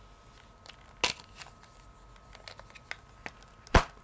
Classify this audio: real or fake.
real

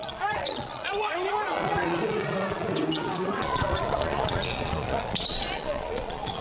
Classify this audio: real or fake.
fake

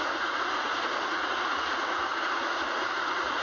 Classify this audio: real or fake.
fake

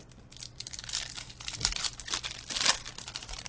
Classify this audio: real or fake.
real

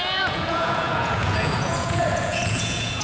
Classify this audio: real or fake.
fake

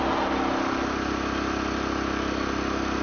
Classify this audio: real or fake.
real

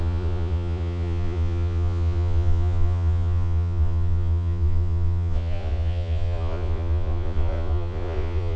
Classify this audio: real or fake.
fake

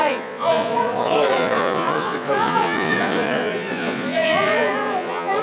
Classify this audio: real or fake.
fake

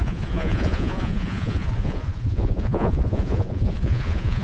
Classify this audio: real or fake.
fake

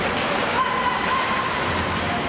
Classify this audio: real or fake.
real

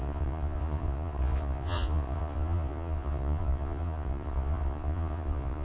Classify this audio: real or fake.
fake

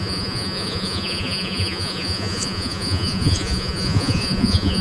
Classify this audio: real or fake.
fake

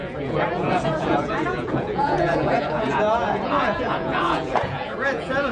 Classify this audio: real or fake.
fake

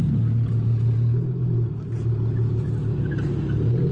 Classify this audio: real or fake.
real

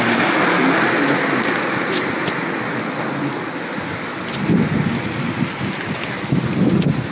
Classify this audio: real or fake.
real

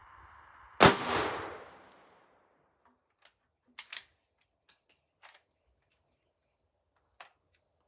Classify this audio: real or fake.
real